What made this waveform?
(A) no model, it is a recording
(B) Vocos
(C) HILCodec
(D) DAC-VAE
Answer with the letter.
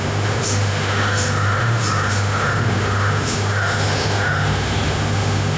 D